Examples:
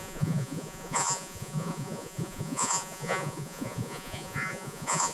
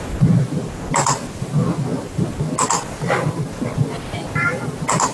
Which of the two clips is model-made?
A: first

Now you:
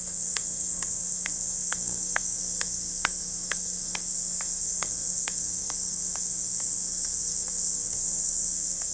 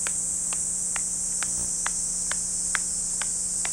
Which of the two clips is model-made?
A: first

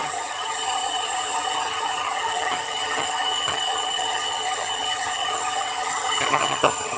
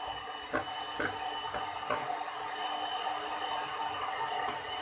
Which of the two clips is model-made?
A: first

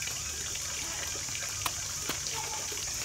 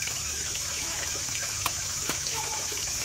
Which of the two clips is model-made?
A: second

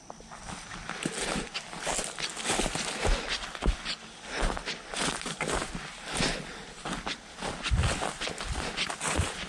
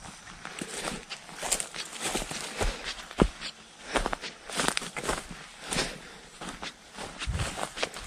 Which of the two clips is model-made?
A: second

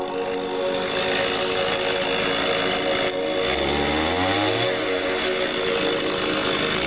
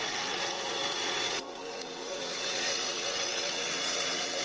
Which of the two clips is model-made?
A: second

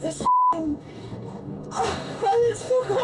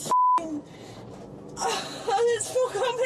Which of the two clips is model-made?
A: first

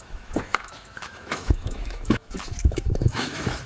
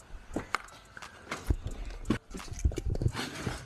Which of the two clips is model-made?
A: first